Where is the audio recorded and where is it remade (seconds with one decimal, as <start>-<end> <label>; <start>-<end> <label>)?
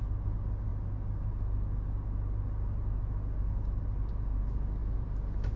0.0-5.6 recorded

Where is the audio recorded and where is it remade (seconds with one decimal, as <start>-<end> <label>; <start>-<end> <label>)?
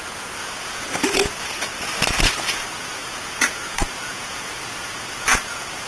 0.0-1.7 remade; 1.7-2.2 recorded; 2.2-5.9 remade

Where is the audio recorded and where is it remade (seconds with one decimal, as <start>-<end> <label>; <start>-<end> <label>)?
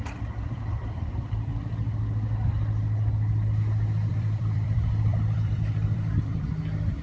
0.0-1.5 remade; 1.5-4.1 recorded; 4.1-7.0 remade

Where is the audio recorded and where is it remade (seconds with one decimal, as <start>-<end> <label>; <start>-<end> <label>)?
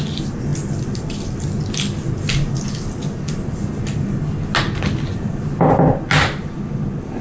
0.0-7.2 recorded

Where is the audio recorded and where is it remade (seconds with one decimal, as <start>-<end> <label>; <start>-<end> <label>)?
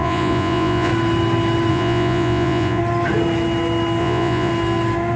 0.0-0.9 remade; 0.9-1.7 recorded; 1.7-2.8 remade; 2.8-4.0 recorded; 4.0-4.5 remade; 4.5-5.2 recorded